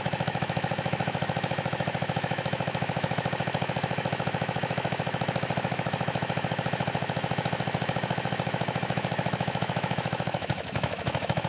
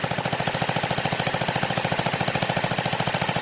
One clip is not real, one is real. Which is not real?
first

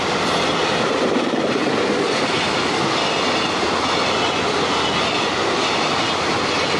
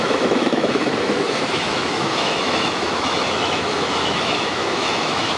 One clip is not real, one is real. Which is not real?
second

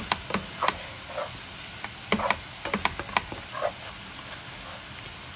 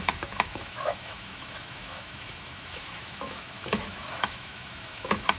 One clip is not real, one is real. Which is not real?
second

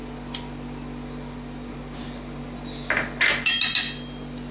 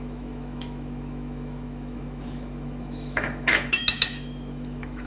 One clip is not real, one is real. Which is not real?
second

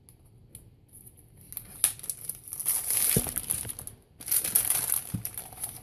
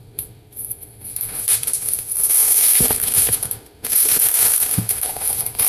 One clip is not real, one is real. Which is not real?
second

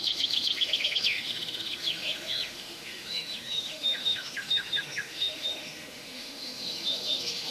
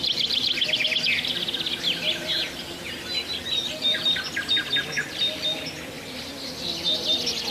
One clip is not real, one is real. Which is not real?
first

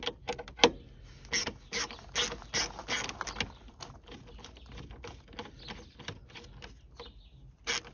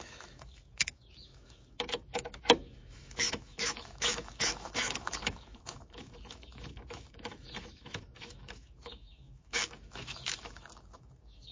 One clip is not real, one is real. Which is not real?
second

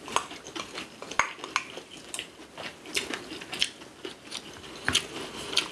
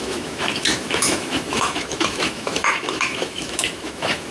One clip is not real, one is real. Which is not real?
second